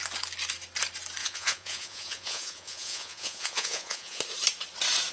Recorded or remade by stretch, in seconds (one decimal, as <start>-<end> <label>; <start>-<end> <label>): 0.0-1.2 recorded; 1.2-4.2 remade; 4.2-5.1 recorded